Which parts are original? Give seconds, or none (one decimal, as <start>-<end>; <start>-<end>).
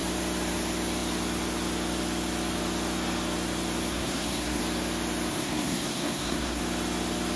0.0-3.9; 4.6-5.3; 6.6-7.4